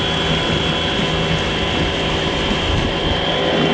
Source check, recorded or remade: recorded